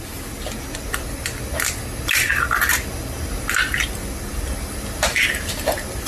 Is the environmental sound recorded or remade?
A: recorded